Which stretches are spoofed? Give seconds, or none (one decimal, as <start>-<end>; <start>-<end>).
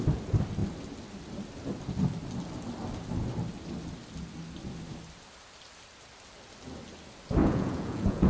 7.4-8.3